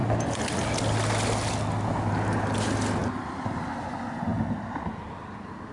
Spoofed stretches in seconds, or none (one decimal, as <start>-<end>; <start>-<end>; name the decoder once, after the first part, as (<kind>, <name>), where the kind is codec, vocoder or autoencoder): none